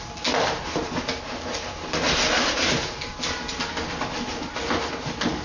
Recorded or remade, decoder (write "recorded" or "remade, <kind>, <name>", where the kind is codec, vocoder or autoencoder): recorded